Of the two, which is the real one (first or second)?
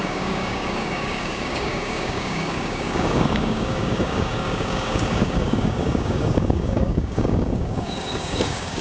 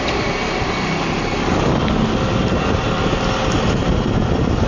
second